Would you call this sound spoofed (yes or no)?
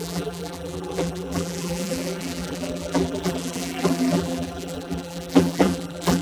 yes